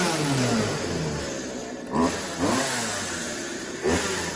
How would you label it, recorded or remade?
recorded